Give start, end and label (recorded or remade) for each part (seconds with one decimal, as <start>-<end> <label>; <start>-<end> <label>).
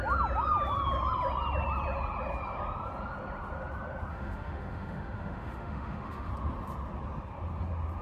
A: 0.0-4.1 recorded; 4.1-6.3 remade; 6.3-8.0 recorded